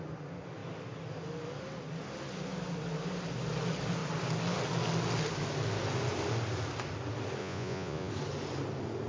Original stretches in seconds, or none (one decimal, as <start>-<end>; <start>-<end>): 0.0-7.4; 8.1-9.1

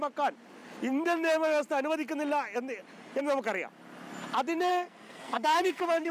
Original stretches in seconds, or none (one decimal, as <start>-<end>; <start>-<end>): 0.0-4.7

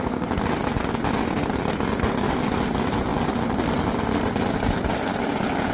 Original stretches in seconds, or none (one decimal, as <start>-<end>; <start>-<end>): 0.0-5.7

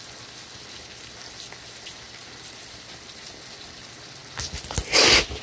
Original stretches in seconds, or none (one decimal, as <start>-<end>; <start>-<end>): 0.0-5.4

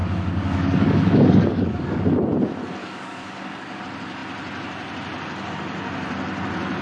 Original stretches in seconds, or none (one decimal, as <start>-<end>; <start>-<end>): 2.0-2.8; 3.8-6.8

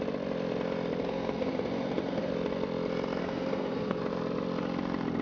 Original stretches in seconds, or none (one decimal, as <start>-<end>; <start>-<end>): 0.0-1.0; 2.3-3.2; 4.0-5.2

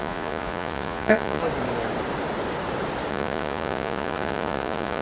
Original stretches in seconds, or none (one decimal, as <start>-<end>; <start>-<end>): 1.4-3.1

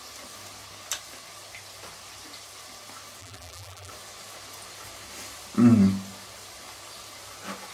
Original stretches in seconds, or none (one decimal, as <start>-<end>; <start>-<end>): 0.0-3.2; 3.9-7.7